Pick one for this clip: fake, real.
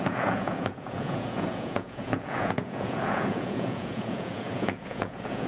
fake